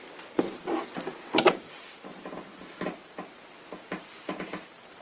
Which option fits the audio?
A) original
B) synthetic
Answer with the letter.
A